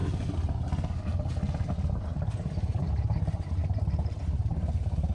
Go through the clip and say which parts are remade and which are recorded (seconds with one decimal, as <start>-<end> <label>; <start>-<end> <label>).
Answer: 0.0-1.9 recorded; 1.9-5.1 remade